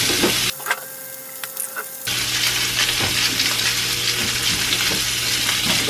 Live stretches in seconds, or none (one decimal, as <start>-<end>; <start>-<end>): 0.0-5.9

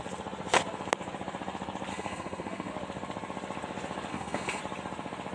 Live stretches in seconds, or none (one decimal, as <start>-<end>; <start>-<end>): 0.0-1.9; 2.7-4.1; 4.6-5.3

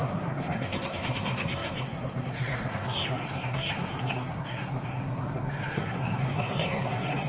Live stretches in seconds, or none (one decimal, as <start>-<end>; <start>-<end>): none

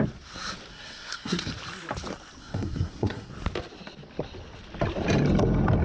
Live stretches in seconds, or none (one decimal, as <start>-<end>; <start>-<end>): 0.0-0.7; 1.5-2.4; 3.3-5.8